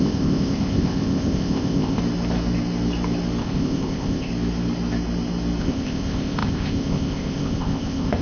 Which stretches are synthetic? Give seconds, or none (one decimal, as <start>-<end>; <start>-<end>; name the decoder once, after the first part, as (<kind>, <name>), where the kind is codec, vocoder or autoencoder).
0.0-2.0 (codec, ZipCodec); 3.4-4.3; 5.6-8.2